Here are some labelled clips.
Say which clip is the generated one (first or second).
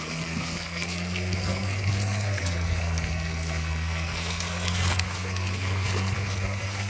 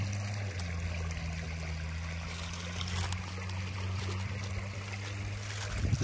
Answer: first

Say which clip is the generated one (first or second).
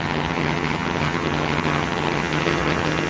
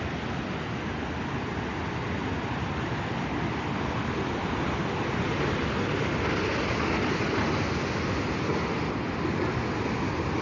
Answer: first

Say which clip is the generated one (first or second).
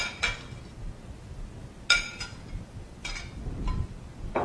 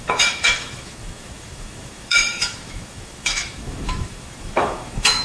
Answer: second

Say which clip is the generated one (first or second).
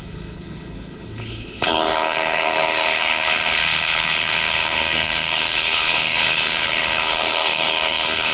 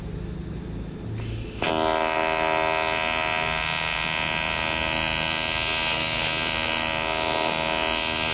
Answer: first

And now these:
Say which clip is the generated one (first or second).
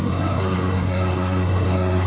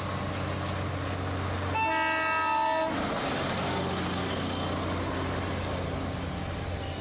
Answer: first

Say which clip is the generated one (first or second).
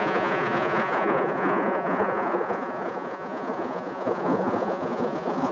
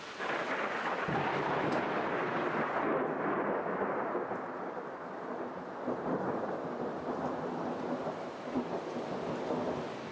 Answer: first